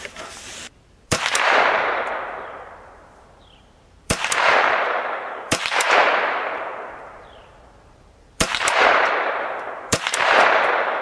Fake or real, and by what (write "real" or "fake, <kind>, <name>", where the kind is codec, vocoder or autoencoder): fake, vocoder, BigVGAN v2